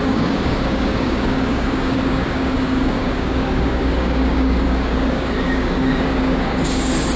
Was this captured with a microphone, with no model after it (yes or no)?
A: no